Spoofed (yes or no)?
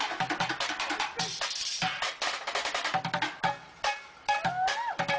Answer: no